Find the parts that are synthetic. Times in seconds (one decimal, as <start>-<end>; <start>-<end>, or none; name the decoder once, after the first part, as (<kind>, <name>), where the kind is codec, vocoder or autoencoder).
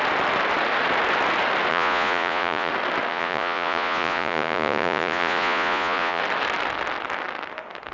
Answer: 1.7-2.7 (vocoder, Vocos); 3.1-6.2